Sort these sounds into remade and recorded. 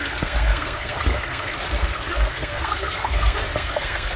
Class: remade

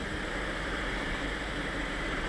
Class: remade